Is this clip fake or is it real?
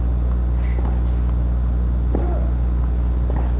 real